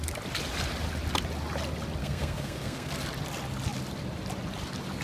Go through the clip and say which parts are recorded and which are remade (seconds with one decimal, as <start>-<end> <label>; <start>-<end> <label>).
0.0-2.0 recorded; 2.0-2.9 remade; 2.9-5.0 recorded